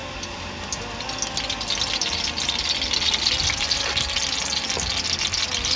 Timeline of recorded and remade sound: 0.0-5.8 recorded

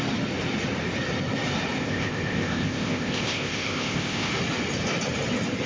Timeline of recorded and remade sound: 0.0-1.8 recorded; 1.8-4.3 remade; 4.3-5.7 recorded

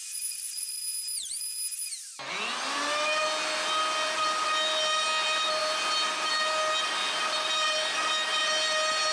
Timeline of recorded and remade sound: 0.0-0.7 remade; 0.7-5.6 recorded; 5.6-6.3 remade; 6.3-9.1 recorded

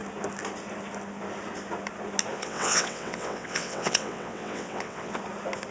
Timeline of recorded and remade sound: 0.0-2.3 recorded; 2.3-5.2 remade; 5.2-5.7 recorded